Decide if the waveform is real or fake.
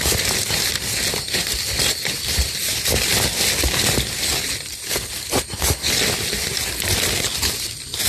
real